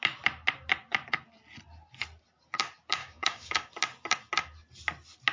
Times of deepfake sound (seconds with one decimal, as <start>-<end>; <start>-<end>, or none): 3.0-3.7